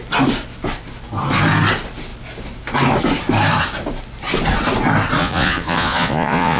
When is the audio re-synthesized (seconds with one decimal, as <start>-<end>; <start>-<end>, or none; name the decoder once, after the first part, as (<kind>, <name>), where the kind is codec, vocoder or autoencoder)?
5.2-6.6 (vocoder, Vocos)